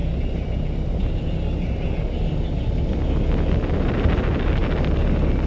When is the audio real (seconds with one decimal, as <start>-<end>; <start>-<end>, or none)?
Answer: 0.0-5.5